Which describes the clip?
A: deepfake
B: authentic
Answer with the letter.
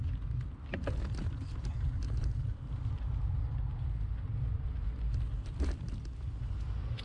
B